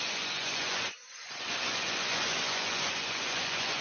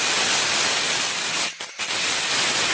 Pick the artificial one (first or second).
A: first